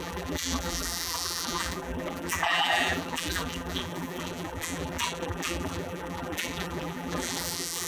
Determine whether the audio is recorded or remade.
remade